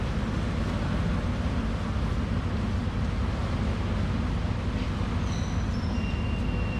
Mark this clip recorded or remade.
recorded